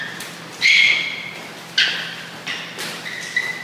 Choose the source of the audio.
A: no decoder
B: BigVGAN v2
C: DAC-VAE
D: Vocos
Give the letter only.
A